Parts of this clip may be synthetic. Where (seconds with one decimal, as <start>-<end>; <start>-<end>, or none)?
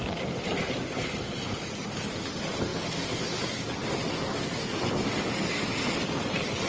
0.0-2.7; 5.7-6.7